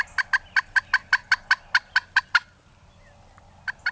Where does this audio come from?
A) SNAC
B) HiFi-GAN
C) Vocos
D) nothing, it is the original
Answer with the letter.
D